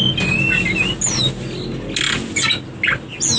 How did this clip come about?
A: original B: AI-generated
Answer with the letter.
A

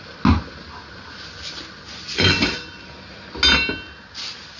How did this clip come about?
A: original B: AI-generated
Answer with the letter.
A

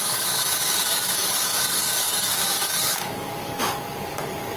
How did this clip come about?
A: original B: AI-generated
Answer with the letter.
B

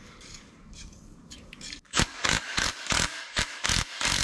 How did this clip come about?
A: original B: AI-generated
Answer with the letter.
B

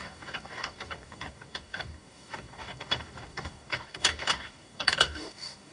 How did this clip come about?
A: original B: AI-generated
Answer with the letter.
B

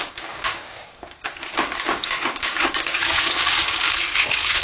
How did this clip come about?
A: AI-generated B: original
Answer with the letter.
A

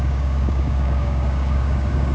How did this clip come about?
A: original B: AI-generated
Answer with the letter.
B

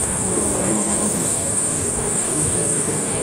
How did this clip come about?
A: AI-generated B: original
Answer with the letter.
A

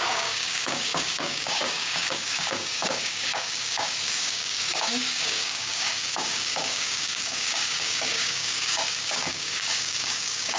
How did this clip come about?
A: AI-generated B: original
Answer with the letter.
A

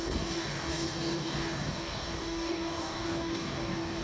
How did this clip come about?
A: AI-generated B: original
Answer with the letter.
A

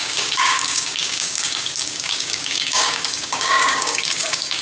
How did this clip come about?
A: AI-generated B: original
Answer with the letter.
A